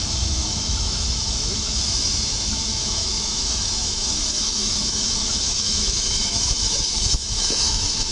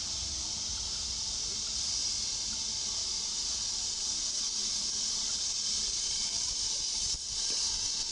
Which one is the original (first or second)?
second